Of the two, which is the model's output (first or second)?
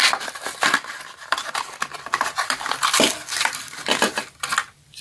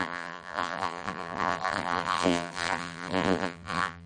second